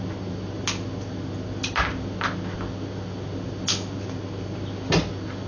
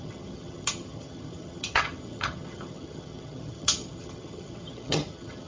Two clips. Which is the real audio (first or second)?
first